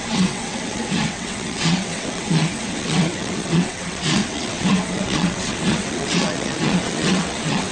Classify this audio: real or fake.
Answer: fake